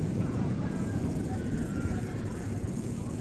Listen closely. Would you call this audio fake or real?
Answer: fake